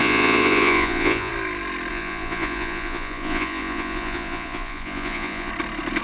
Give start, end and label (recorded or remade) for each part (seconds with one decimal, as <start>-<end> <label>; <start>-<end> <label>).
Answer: 0.0-1.3 remade; 1.3-1.9 recorded; 1.9-5.5 remade; 5.5-6.0 recorded